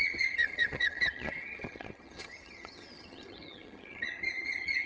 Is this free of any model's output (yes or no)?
no